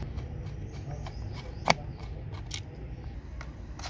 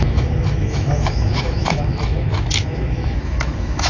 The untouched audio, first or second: first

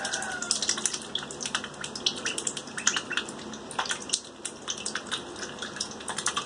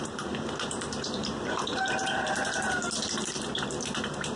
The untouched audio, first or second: first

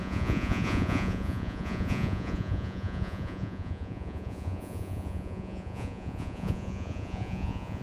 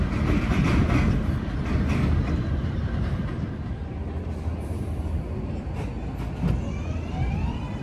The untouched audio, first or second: second